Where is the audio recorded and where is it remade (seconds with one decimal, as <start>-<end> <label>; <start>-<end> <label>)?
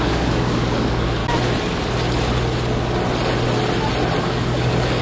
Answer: 0.0-1.2 remade; 1.2-4.2 recorded; 4.2-5.0 remade